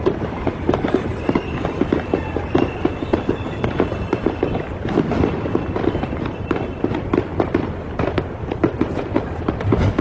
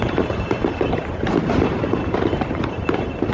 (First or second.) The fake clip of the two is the second